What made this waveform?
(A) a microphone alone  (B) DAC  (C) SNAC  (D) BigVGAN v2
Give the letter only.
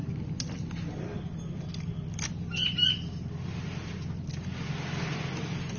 A